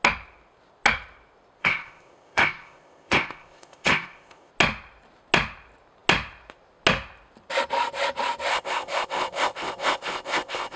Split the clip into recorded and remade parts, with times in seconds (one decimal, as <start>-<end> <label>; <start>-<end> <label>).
0.0-1.6 recorded; 1.6-4.5 remade; 4.5-8.5 recorded; 8.5-10.8 remade